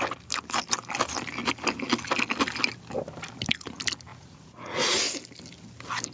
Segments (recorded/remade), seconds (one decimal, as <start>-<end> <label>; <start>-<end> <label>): 0.0-4.1 recorded; 4.1-5.0 remade; 5.0-6.1 recorded